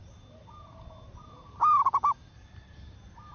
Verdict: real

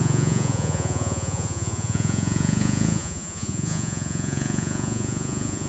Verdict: fake